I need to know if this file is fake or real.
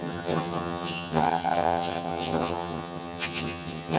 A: fake